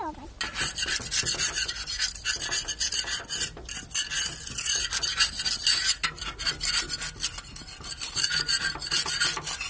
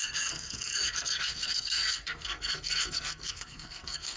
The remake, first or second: second